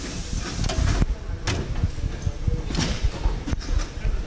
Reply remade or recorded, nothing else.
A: recorded